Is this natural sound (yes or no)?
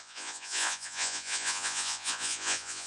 no